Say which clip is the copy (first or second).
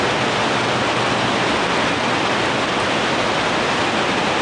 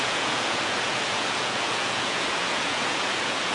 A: second